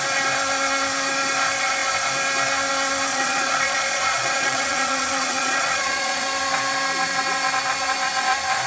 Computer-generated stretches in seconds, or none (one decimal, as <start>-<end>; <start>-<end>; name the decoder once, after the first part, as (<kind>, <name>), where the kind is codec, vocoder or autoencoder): 3.1-6.2 (vocoder, Vocos)